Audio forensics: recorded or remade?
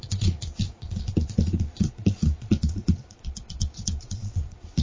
remade